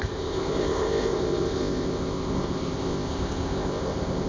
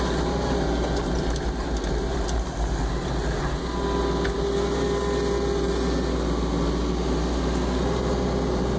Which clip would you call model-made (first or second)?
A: first